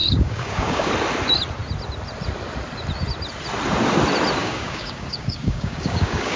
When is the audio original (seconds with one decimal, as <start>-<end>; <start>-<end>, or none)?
0.9-4.4